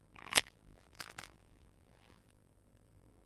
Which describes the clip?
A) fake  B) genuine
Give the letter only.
A